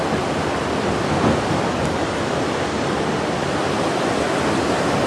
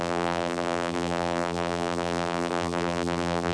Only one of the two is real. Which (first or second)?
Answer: first